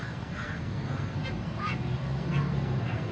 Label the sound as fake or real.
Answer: fake